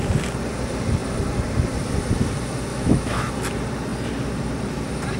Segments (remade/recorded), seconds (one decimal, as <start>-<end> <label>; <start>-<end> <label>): 0.0-2.7 recorded; 2.7-3.3 remade; 3.3-5.2 recorded